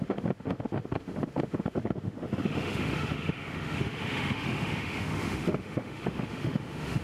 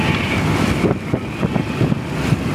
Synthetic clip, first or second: first